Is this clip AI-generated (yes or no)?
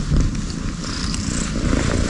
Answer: yes